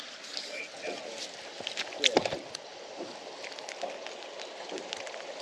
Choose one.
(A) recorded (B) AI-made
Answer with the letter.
A